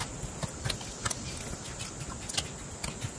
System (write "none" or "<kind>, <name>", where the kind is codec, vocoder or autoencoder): none